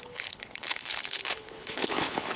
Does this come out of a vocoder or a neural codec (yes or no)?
yes